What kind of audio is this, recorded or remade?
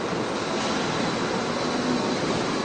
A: recorded